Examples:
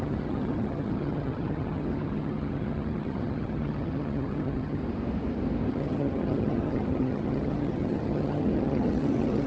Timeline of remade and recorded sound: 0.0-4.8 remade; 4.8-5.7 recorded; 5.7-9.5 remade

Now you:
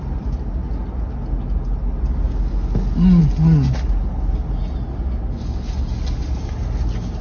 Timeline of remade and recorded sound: 0.0-7.2 recorded

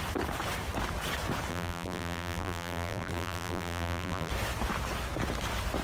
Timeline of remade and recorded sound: 0.0-1.5 recorded; 1.5-4.3 remade; 4.3-5.8 recorded

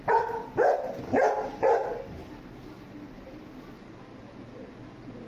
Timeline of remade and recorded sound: 0.0-5.3 recorded